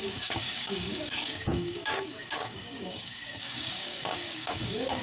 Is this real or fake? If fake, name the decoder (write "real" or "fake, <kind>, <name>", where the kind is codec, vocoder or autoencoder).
fake, codec, DAC